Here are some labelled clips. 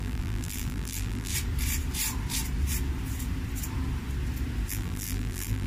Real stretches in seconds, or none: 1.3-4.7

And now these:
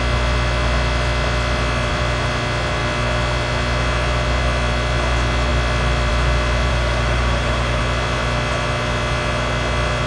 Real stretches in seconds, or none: 0.0-6.7; 7.8-10.1

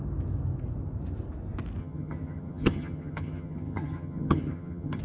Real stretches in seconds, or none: 0.0-1.8

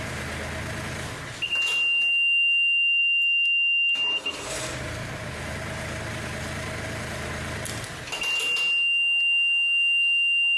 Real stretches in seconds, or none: 0.0-10.6

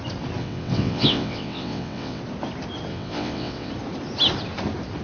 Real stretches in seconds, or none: 0.0-0.4; 2.2-2.9; 3.7-5.0

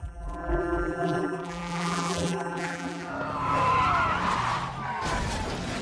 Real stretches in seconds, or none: 3.1-5.8

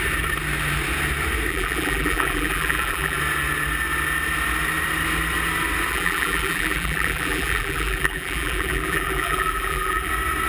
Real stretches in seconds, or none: 0.0-1.5; 3.2-5.9; 10.1-10.5

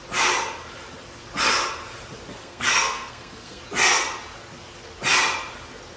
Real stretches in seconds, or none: 0.0-2.4; 3.6-6.0